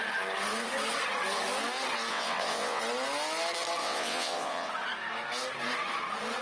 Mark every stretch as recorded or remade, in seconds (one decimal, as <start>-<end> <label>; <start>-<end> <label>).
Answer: 0.0-2.1 recorded; 2.1-2.8 remade; 2.8-3.8 recorded; 3.8-4.7 remade; 4.7-6.4 recorded

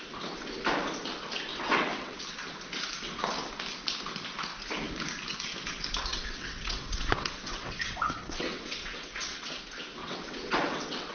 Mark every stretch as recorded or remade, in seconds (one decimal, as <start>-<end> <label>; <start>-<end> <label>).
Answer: 0.0-1.5 recorded; 1.5-2.2 remade; 2.2-6.1 recorded; 6.1-9.6 remade; 9.6-10.0 recorded; 10.0-11.1 remade

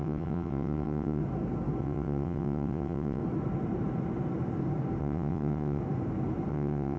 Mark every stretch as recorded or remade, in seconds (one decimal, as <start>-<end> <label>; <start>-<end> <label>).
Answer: 0.0-1.2 remade; 1.2-1.8 recorded; 1.8-3.2 remade; 3.2-5.0 recorded; 5.0-5.8 remade; 5.8-6.5 recorded; 6.5-7.0 remade